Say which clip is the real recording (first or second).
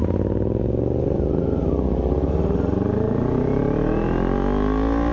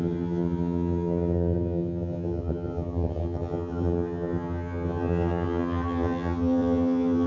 first